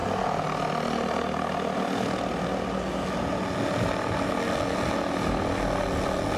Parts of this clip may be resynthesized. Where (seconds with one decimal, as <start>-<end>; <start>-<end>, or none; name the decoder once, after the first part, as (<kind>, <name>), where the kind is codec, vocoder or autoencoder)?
none